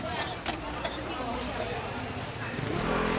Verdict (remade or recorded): remade